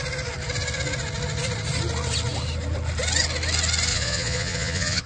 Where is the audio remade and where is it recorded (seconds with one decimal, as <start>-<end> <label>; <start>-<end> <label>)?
0.0-3.9 recorded; 3.9-5.1 remade